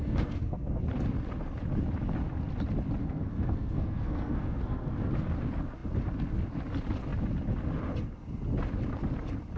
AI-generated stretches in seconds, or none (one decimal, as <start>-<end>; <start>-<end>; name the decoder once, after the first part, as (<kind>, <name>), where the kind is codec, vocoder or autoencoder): 0.0-0.8 (codec, SNAC); 3.0-4.9